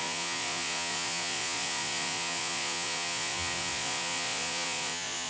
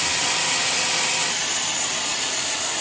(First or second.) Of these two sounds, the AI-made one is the first